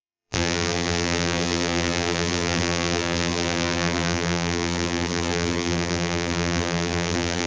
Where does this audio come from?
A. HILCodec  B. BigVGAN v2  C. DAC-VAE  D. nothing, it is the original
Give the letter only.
B